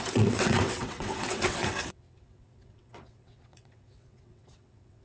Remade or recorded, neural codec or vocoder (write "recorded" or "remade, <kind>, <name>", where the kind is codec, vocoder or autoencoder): remade, vocoder, WaveNeXt